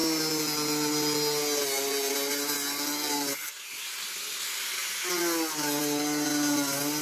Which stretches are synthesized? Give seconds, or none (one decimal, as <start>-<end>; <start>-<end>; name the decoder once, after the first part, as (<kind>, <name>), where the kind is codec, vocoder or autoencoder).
none